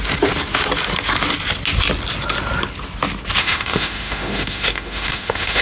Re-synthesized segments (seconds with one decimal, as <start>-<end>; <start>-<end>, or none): 3.4-5.6